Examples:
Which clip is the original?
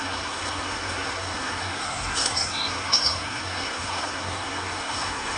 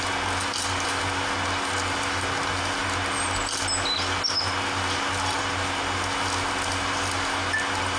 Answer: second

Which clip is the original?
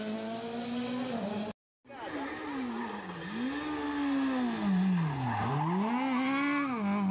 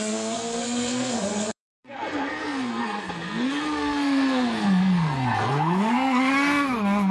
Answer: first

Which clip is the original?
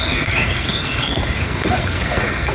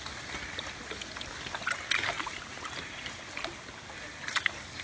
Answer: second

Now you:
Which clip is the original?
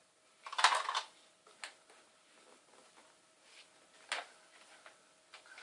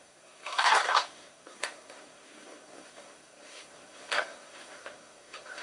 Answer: first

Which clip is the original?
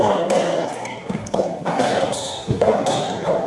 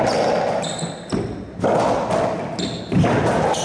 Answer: second